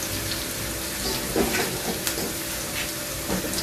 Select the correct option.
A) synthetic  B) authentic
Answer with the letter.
B